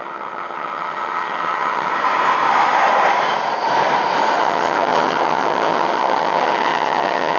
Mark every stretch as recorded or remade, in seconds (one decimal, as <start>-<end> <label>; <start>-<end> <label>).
0.0-1.9 remade; 1.9-4.4 recorded; 4.4-7.4 remade

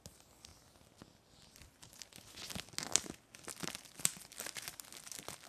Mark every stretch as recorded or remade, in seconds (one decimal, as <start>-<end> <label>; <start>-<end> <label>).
0.0-5.5 recorded

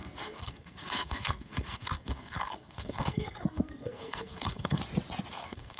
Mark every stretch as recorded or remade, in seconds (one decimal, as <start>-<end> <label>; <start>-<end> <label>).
0.0-4.8 remade; 4.8-5.3 recorded; 5.3-5.8 remade

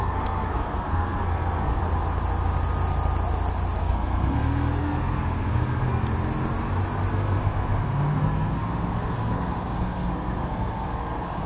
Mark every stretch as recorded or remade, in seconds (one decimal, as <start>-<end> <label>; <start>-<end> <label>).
0.0-1.8 remade; 1.8-3.8 recorded; 3.8-6.0 remade; 6.0-7.1 recorded; 7.1-11.5 remade

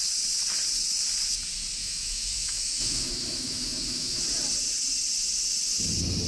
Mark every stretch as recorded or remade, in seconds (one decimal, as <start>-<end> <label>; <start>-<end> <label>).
0.0-1.8 recorded; 1.8-4.2 remade; 4.2-6.3 recorded

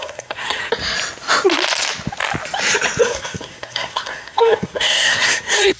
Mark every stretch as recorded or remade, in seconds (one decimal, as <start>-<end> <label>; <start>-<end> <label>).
0.0-0.6 remade; 0.6-3.0 recorded; 3.0-5.8 remade

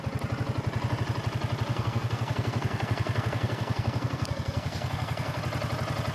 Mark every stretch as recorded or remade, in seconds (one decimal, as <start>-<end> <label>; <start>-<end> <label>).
0.0-1.7 recorded; 1.7-5.4 remade; 5.4-6.1 recorded